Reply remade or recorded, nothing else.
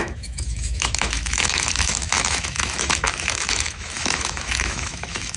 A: remade